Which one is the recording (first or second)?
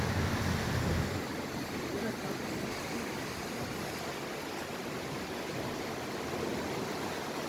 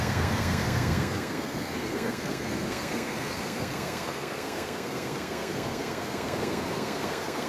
first